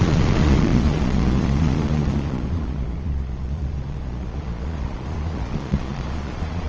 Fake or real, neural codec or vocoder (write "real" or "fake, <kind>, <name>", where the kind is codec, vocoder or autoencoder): fake, vocoder, Vocos